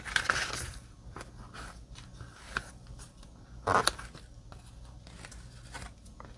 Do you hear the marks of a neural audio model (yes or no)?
no